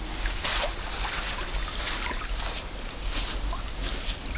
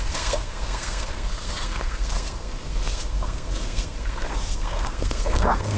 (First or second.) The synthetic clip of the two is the second